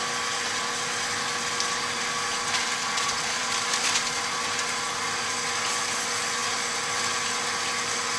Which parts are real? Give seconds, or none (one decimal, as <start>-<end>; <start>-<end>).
0.0-2.8; 3.5-8.2